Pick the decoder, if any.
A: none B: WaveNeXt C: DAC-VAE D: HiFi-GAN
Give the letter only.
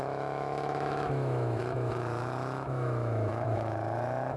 C